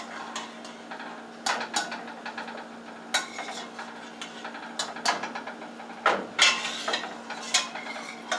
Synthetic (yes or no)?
no